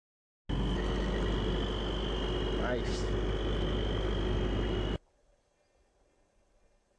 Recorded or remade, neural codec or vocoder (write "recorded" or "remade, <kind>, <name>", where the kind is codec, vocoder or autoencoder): recorded